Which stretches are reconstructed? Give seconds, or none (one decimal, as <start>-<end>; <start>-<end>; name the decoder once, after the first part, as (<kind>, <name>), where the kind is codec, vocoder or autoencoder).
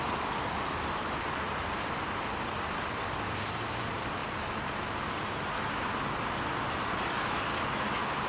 none